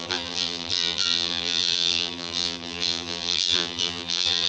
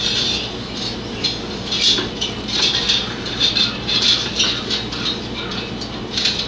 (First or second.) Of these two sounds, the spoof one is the first